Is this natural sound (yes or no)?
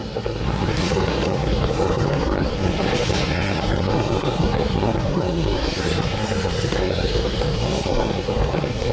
no